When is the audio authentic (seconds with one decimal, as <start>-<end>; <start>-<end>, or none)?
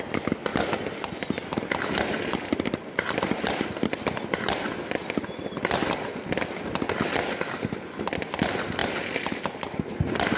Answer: 0.0-10.4